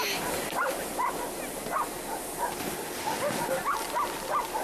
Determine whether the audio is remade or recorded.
remade